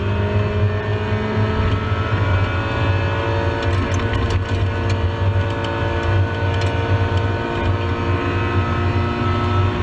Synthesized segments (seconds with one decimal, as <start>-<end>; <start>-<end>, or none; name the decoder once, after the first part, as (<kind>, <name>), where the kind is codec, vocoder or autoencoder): none